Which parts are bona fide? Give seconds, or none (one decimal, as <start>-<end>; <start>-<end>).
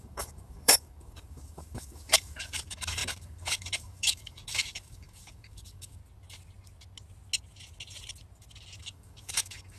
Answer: 6.0-8.8